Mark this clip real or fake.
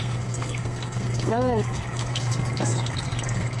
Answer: fake